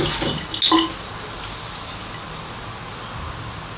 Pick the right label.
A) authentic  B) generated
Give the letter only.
A